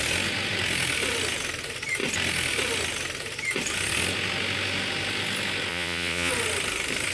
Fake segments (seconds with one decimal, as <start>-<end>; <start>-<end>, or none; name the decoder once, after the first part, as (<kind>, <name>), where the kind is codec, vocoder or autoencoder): 5.7-6.3 (vocoder, Vocos)